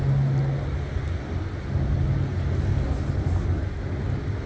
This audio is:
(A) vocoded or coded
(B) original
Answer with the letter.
B